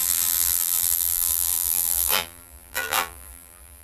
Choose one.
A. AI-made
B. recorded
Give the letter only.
A